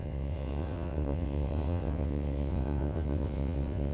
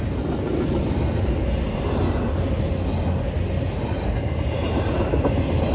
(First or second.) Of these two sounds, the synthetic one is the first